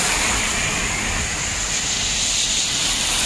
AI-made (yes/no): no